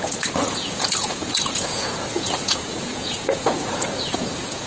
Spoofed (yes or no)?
yes